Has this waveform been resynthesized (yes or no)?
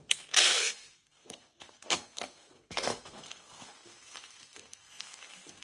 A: yes